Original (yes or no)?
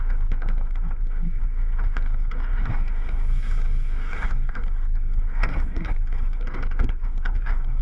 no